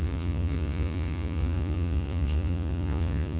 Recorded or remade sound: remade